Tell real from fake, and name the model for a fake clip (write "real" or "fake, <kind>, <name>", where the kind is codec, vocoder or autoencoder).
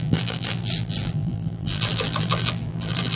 fake, vocoder, BigVGAN v2